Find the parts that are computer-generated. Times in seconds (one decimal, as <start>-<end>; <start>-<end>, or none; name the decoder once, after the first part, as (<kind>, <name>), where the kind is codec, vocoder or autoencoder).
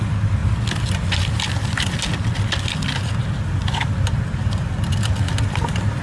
none